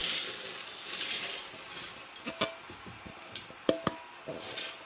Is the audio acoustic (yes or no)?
yes